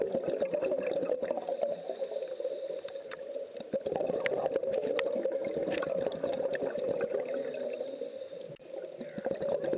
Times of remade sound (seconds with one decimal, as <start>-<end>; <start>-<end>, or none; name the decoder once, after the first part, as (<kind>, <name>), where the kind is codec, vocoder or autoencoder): none